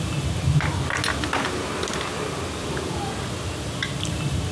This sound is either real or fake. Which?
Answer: real